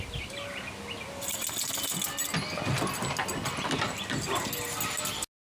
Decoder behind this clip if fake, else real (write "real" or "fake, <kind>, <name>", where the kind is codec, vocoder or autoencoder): real